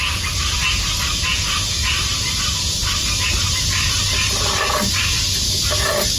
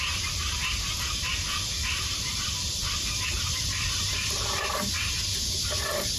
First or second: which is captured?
first